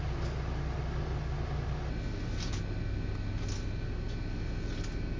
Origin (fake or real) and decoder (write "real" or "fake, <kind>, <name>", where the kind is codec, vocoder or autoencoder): real